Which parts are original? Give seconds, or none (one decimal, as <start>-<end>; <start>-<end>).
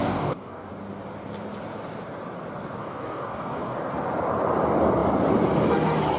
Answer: 0.7-2.8; 3.9-6.2